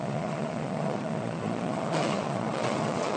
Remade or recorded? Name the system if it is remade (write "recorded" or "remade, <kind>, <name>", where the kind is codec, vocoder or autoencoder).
remade, vocoder, Vocos